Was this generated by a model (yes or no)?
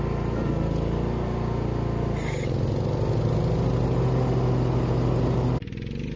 no